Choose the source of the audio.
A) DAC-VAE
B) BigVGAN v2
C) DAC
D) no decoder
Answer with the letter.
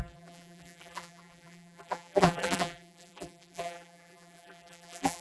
B